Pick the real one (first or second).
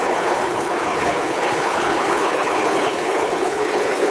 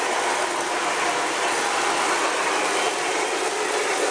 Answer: second